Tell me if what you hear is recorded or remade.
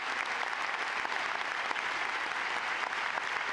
recorded